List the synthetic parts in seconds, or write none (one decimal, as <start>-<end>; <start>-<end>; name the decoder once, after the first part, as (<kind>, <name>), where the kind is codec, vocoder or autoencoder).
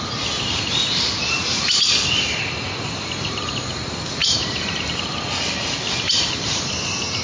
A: 0.8-1.6 (vocoder, BigVGAN v2); 4.2-5.1